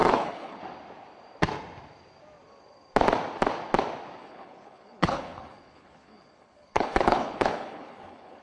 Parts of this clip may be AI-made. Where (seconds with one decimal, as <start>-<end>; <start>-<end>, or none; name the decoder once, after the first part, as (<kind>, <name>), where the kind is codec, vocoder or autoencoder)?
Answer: 0.0-0.6 (codec, HILCodec); 4.2-8.4